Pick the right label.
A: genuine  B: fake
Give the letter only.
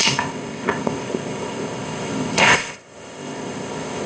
B